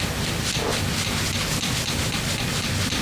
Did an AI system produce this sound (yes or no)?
no